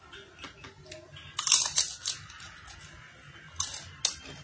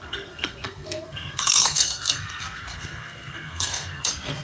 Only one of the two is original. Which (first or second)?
first